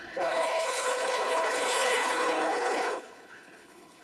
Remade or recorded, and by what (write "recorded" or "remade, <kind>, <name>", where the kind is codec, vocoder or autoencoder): remade, codec, HILCodec